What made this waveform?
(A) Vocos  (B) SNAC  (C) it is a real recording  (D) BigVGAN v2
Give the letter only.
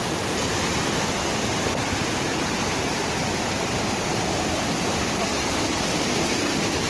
C